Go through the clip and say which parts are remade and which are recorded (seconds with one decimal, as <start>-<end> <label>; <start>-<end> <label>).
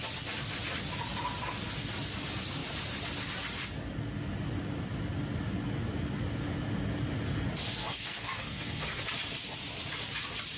0.0-7.8 recorded; 7.8-9.0 remade; 9.0-10.6 recorded